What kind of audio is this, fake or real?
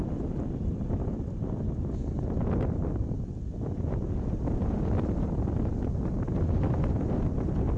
real